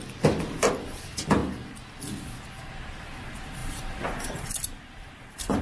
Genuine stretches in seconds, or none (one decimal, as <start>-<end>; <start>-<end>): 0.0-3.6